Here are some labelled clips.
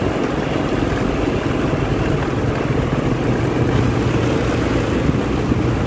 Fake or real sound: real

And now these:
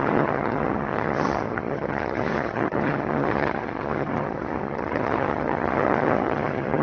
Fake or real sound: fake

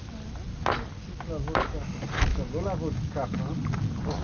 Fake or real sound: real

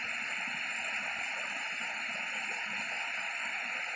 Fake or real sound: real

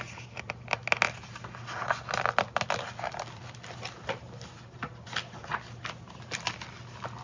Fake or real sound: real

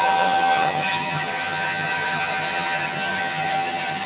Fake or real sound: fake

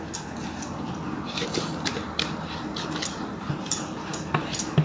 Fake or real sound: real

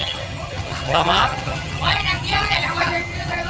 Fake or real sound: fake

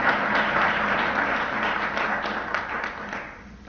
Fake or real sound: real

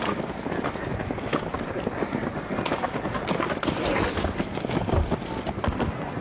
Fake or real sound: real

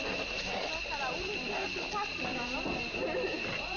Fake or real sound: real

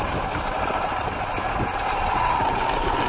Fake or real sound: real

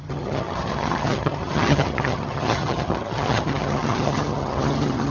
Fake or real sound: fake